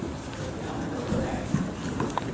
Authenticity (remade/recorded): recorded